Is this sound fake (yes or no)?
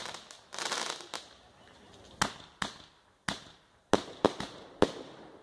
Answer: no